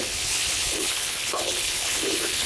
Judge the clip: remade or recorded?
remade